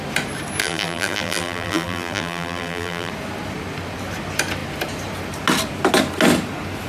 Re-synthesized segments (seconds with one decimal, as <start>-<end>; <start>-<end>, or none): 0.6-3.1